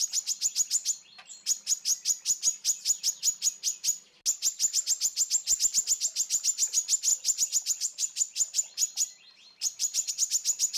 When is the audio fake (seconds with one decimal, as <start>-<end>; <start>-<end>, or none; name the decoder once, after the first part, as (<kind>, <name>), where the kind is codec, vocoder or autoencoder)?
7.1-10.1 (vocoder, BigVGAN v2)